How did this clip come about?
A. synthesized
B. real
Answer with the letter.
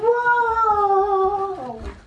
B